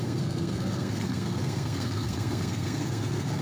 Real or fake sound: fake